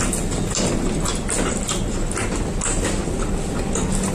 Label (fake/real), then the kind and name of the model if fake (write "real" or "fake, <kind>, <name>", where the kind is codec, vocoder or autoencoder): real